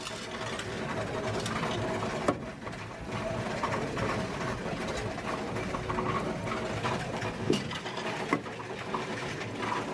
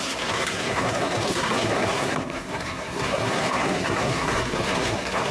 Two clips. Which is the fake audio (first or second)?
second